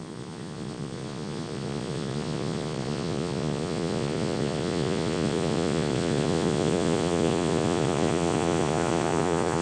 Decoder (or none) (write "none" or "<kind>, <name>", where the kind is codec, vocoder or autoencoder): vocoder, Vocos